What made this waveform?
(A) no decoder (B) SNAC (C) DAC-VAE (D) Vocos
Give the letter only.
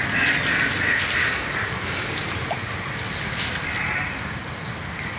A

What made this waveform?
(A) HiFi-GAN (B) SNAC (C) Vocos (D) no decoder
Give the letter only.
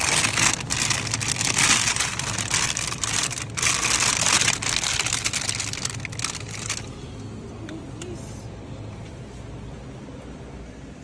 D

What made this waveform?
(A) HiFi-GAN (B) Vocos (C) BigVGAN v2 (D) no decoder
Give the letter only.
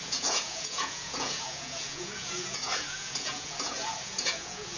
B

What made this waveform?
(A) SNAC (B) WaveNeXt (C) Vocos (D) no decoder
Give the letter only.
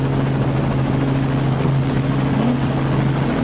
D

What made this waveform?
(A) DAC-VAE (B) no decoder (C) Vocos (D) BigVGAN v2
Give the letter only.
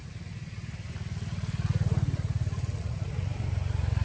B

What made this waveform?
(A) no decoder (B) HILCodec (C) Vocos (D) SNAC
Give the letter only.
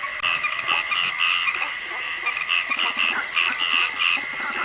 A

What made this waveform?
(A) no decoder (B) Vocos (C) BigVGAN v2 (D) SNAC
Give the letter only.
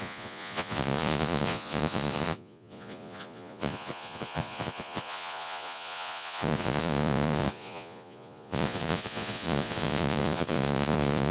B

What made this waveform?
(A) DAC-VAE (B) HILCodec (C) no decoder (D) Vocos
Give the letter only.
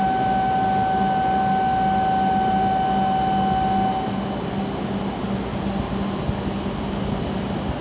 C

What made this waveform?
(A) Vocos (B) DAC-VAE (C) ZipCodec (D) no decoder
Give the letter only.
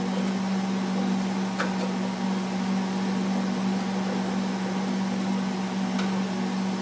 D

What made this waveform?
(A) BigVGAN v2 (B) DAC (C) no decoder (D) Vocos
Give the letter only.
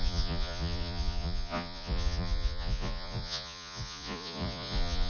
D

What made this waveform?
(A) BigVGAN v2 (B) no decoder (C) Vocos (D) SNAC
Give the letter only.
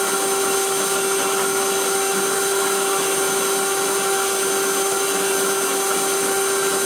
B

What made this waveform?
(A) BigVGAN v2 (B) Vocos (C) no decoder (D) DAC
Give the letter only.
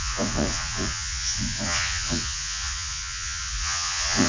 B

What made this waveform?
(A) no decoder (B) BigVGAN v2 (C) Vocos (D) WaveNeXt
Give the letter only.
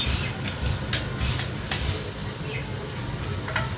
A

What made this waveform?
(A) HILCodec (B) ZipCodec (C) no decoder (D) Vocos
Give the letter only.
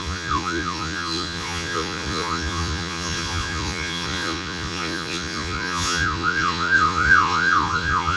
D